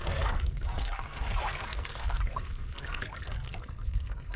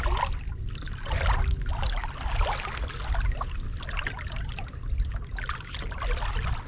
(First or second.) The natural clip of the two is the second